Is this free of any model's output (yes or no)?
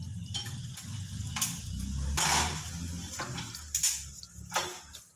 yes